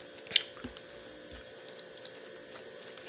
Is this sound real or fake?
real